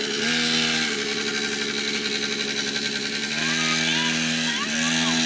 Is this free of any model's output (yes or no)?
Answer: yes